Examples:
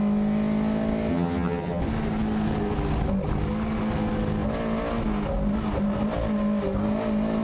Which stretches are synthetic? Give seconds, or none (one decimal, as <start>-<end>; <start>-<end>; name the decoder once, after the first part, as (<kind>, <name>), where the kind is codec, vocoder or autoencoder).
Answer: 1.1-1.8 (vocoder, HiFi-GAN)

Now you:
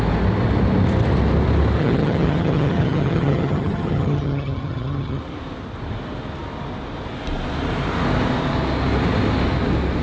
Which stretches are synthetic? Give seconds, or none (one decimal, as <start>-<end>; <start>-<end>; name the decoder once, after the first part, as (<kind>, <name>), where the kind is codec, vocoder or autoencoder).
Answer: 1.8-5.2 (vocoder, HiFi-GAN)

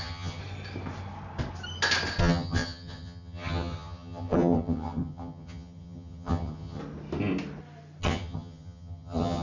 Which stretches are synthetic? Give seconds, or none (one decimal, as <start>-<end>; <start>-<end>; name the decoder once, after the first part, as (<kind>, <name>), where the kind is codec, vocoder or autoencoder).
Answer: 0.0-0.4 (vocoder, HiFi-GAN); 2.2-6.8; 8.0-9.4

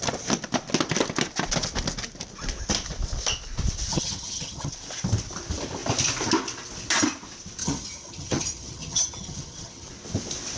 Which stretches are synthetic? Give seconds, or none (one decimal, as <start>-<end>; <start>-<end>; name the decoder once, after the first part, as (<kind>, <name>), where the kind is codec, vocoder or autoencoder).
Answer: 3.9-4.7 (vocoder, HiFi-GAN); 7.6-9.9

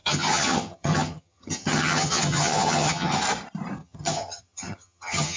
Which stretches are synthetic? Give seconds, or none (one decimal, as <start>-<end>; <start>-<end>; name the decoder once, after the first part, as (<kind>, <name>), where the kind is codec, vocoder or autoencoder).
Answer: 0.0-3.2 (vocoder, HiFi-GAN); 3.8-5.4

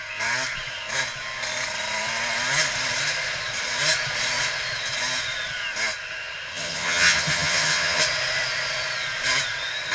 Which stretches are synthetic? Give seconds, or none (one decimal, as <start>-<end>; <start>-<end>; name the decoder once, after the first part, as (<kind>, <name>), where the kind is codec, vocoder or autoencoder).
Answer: 6.5-8.0 (vocoder, HiFi-GAN)

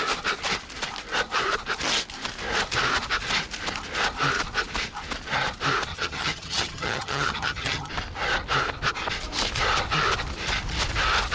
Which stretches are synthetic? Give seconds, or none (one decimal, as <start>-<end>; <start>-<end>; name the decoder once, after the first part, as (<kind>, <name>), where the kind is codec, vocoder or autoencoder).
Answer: 5.9-7.9 (vocoder, HiFi-GAN)